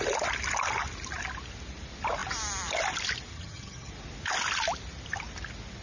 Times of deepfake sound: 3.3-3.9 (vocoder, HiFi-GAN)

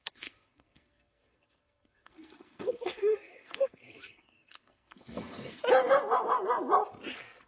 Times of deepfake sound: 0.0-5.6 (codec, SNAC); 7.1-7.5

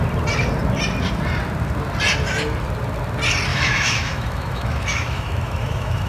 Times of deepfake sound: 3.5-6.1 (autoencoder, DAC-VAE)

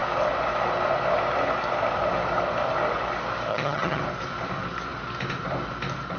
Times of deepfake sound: 3.5-4.0 (vocoder, HiFi-GAN)

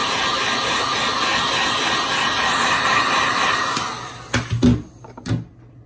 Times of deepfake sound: none